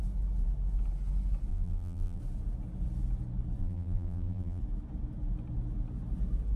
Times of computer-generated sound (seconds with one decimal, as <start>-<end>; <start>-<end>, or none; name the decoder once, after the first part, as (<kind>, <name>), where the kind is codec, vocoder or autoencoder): 1.5-2.2 (vocoder, BigVGAN v2); 3.6-4.6